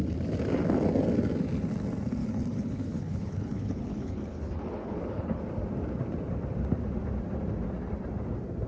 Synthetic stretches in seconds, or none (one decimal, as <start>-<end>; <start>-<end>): 2.2-5.4